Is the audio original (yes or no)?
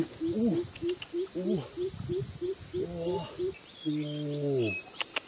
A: yes